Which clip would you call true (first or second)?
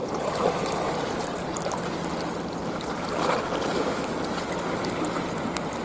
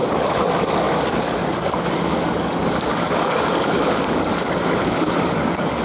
first